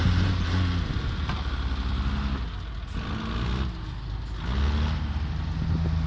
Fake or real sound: real